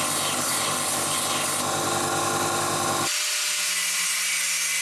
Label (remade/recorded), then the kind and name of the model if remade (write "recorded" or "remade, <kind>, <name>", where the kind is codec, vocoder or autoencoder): recorded